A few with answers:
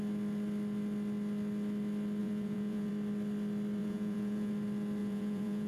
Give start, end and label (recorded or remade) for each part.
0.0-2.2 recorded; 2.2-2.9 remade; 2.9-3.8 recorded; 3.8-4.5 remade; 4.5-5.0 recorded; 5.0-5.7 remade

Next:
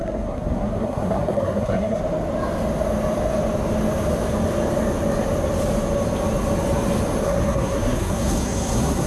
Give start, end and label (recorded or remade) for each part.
0.0-2.0 remade; 2.0-7.2 recorded; 7.2-9.1 remade